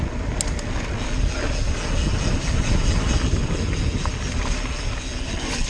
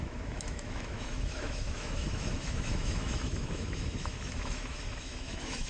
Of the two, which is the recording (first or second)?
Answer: first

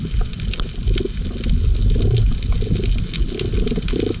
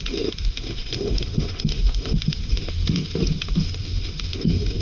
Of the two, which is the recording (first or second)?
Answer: first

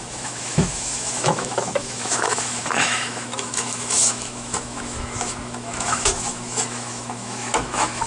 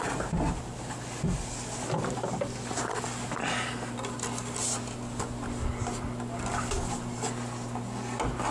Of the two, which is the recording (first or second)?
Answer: second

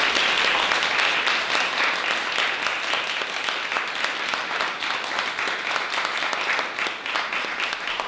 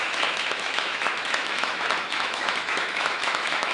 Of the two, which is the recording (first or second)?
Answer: first